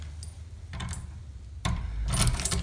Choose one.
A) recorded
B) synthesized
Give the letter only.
A